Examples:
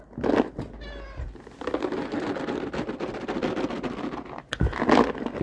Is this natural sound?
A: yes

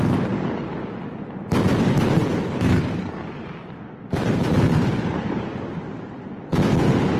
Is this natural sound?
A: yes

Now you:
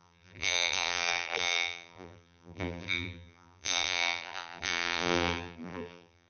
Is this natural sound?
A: no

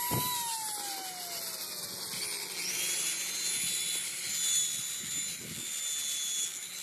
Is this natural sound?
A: yes